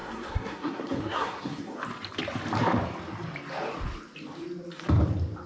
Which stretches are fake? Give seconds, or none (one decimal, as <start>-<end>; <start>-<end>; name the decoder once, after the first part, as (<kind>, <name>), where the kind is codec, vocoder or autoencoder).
0.0-1.8 (codec, SNAC)